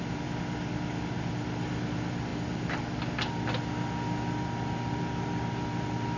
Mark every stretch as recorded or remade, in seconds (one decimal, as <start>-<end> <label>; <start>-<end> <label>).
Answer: 0.0-6.2 recorded